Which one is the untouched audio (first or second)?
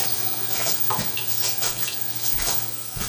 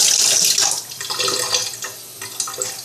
second